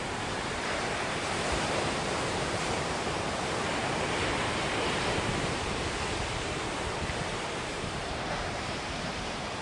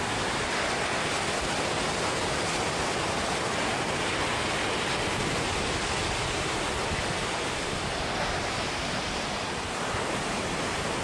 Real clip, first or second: second